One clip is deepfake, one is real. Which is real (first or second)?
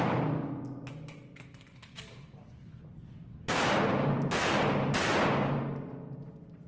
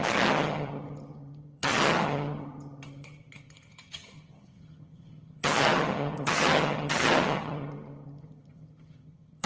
first